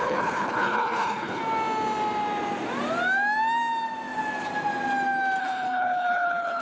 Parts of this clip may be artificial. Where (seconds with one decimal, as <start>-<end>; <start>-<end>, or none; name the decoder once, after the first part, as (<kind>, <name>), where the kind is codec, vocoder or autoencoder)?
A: 0.0-1.4 (codec, HILCodec); 5.4-6.6